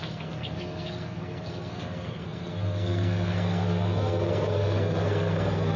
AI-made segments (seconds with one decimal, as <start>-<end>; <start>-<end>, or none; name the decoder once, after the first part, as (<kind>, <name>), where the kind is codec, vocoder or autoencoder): 0.0-5.8 (codec, SNAC)

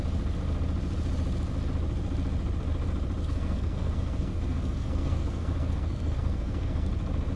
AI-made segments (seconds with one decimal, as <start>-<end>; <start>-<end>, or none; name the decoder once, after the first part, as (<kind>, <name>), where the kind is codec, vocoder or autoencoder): 3.2-6.9 (codec, SNAC)

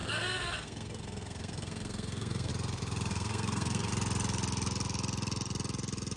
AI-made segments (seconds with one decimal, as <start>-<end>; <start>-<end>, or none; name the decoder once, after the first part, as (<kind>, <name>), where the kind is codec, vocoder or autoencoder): 0.0-2.5 (codec, SNAC); 3.1-3.9

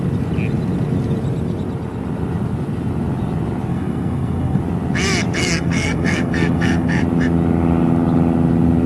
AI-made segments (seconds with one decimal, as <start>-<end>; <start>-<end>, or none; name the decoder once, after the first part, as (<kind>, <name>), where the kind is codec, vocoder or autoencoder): 3.7-4.6 (codec, SNAC); 5.4-7.0

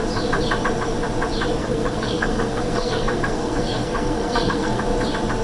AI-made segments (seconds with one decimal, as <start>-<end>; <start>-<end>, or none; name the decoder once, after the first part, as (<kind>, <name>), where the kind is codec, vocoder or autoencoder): 1.6-4.8 (codec, SNAC)

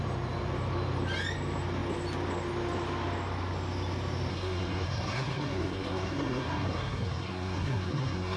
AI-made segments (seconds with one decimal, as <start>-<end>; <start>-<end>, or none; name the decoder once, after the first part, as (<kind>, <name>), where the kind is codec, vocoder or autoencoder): 4.3-8.4 (codec, SNAC)